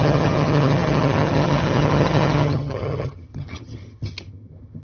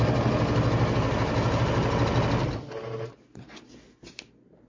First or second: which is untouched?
second